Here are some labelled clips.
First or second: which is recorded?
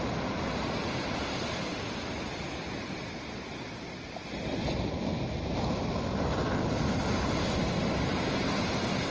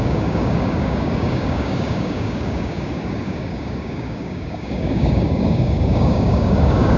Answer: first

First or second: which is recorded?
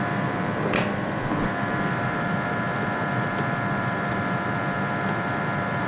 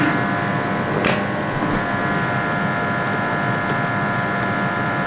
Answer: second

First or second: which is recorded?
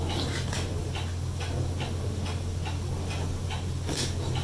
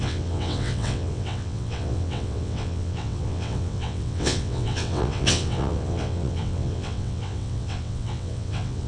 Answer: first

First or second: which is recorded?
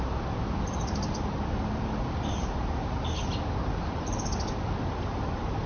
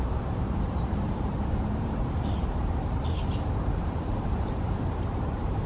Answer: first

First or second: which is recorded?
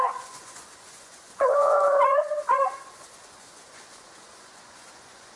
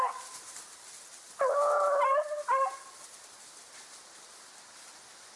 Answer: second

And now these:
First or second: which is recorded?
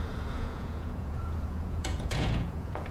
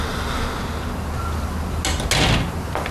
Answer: second